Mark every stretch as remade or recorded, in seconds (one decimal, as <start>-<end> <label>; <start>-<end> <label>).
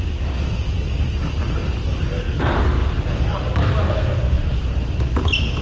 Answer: 0.0-5.6 recorded